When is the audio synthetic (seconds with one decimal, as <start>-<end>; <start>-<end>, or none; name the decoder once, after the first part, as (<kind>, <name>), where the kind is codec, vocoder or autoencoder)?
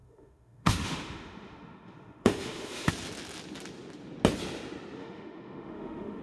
0.0-2.9 (autoencoder, DAC-VAE); 5.0-6.2